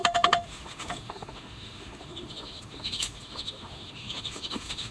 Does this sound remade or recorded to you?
remade